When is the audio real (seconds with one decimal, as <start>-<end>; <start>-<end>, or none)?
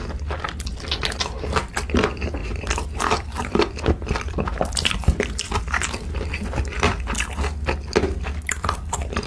0.0-2.4; 7.3-9.3